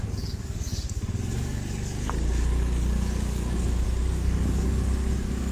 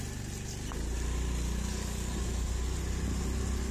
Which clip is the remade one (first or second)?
first